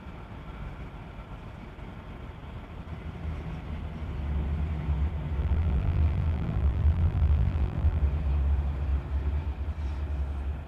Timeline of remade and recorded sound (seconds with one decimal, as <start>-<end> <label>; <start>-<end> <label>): 0.0-5.4 recorded; 5.4-8.0 remade; 8.0-10.7 recorded